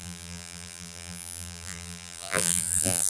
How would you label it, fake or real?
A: fake